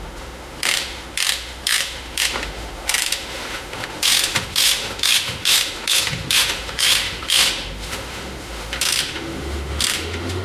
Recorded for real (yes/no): no